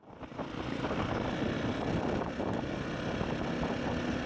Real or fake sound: real